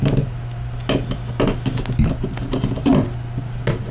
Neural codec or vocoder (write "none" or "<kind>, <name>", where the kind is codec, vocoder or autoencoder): none